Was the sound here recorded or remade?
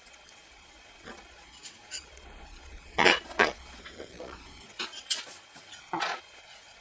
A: remade